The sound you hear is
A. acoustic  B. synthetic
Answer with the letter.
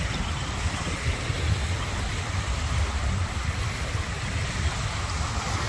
A